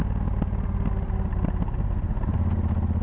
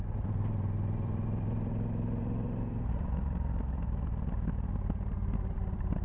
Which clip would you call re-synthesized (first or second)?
second